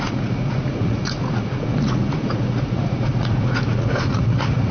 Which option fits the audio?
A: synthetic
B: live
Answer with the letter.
A